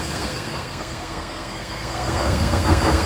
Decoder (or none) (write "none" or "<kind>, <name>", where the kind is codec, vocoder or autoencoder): codec, SNAC